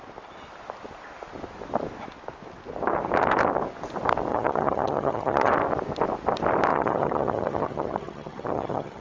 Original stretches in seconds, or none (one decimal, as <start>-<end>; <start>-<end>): 0.0-4.3; 5.5-6.7